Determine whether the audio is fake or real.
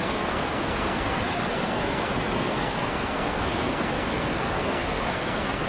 fake